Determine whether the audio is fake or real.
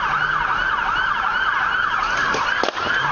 real